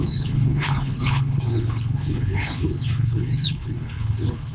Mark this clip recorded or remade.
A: remade